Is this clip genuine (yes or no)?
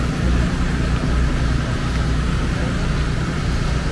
yes